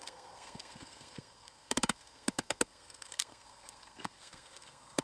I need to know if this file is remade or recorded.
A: remade